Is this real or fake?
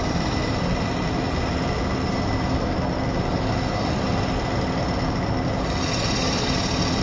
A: real